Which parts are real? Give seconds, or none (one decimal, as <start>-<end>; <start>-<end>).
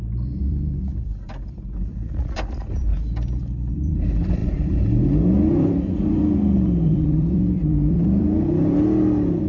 2.9-3.7